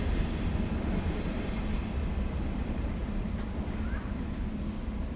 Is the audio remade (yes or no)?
no